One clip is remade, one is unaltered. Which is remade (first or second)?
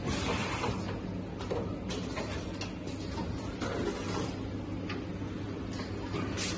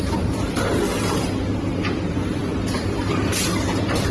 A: second